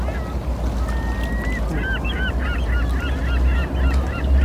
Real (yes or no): yes